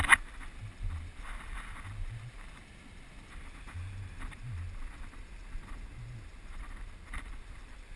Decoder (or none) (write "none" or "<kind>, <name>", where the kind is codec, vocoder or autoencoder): none